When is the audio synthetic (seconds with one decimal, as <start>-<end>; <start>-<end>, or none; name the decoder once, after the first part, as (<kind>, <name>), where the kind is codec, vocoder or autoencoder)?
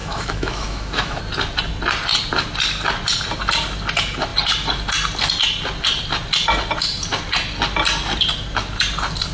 0.0-1.2 (autoencoder, DAC-VAE)